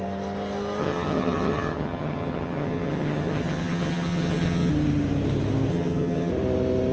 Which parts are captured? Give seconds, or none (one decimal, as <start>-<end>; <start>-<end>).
0.0-0.8; 4.7-5.7; 6.3-6.9